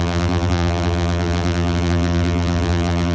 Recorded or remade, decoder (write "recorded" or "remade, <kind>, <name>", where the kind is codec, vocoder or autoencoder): remade, vocoder, BigVGAN v2